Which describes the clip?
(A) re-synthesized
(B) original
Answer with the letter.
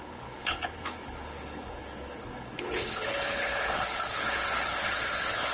A